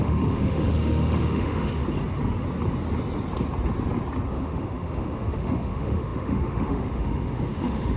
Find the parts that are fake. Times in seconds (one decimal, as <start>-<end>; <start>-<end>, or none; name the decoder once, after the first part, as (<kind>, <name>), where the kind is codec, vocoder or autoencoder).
0.0-1.8 (autoencoder, DAC-VAE); 4.3-8.0